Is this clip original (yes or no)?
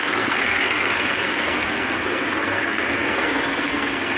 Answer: no